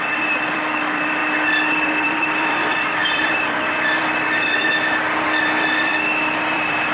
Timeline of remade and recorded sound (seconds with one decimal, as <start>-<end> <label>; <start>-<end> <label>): 0.0-1.2 remade; 1.2-1.9 recorded; 1.9-5.9 remade; 5.9-6.5 recorded; 6.5-6.9 remade